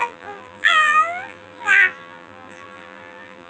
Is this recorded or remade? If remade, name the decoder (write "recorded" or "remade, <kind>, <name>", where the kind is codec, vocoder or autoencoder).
remade, vocoder, BigVGAN v2